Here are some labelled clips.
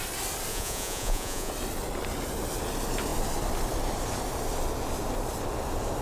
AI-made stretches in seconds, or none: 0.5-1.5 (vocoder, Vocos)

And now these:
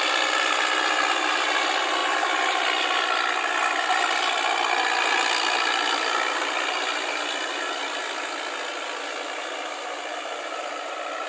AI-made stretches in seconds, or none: none

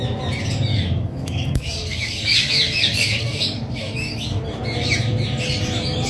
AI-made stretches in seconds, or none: 0.7-4.4 (codec, DAC)

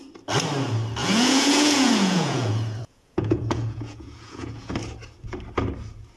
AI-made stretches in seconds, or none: 1.0-4.7 (vocoder, Vocos)

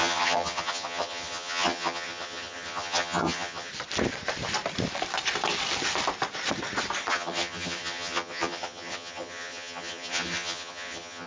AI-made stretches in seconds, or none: 0.0-3.7 (vocoder, HiFi-GAN); 7.1-11.3